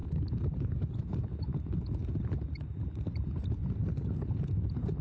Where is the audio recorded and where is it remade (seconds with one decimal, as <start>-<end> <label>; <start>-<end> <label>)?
0.0-5.0 recorded